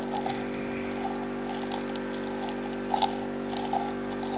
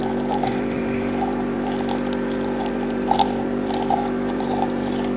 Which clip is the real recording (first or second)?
first